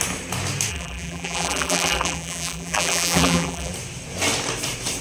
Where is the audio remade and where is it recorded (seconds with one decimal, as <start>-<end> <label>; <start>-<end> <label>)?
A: 0.0-0.7 recorded; 0.7-3.7 remade; 3.7-5.0 recorded